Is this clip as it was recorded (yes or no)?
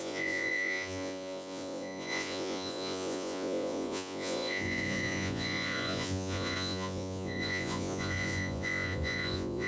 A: no